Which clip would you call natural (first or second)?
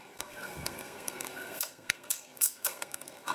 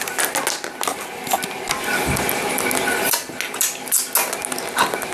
second